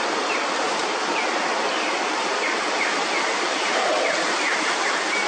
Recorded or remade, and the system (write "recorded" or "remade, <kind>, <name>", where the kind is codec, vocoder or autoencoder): recorded